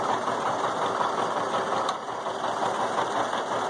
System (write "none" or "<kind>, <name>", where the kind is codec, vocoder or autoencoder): none